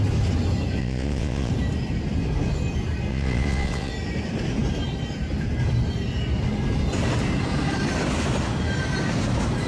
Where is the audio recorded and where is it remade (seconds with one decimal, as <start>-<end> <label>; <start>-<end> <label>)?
0.0-0.8 recorded; 0.8-1.5 remade; 1.5-3.1 recorded; 3.1-3.9 remade; 3.9-9.7 recorded